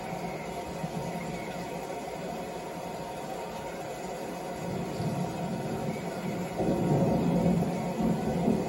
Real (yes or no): yes